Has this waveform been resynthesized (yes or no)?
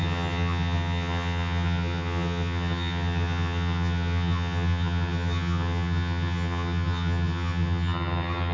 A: yes